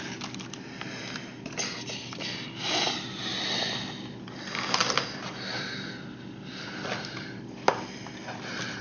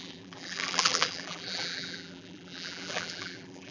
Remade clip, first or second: second